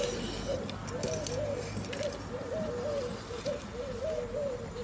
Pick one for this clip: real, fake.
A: real